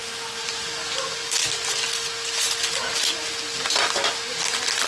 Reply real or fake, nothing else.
real